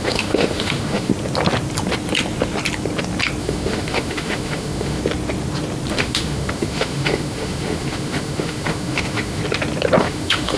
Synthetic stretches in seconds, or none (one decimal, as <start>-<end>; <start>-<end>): 0.0-1.1; 3.4-5.0; 5.9-9.4; 10.0-10.6